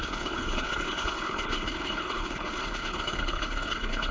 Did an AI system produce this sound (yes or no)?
yes